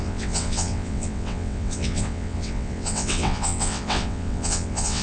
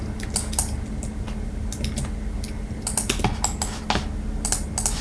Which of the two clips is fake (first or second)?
first